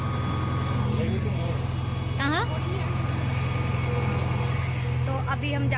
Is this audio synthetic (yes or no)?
no